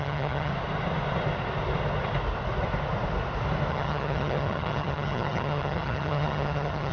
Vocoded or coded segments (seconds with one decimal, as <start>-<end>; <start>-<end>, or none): 0.0-0.5; 3.7-6.9